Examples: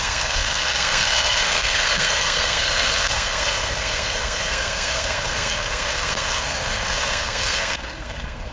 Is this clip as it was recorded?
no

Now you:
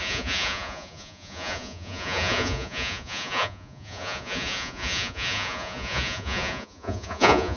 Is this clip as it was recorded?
no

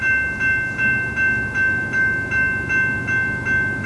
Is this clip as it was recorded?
yes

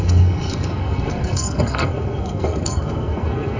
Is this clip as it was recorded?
no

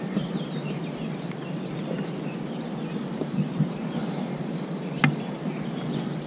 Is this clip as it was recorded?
yes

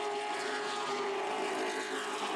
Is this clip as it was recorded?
yes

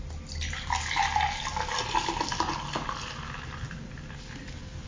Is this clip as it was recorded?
yes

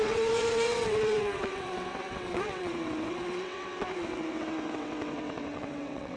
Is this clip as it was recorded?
no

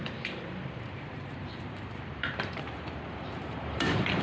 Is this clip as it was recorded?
no